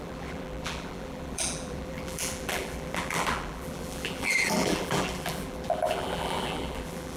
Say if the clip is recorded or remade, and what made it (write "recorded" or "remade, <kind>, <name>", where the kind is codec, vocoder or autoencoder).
remade, vocoder, BigVGAN v2